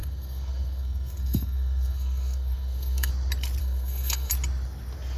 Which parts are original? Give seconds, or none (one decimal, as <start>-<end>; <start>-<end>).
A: 3.1-3.6; 4.3-5.2